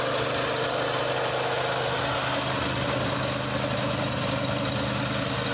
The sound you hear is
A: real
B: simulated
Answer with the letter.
A